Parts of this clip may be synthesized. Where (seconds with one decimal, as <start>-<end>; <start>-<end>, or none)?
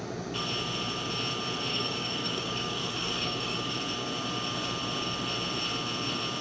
1.7-3.8